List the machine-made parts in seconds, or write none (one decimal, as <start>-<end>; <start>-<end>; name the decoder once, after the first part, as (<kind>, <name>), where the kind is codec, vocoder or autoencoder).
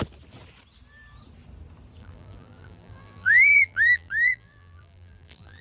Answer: 2.0-5.6 (vocoder, BigVGAN v2)